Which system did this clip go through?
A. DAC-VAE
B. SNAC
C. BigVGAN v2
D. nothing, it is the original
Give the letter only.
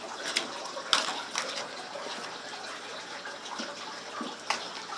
D